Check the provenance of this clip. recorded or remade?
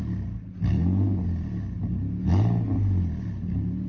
recorded